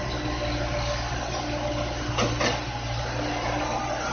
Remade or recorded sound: recorded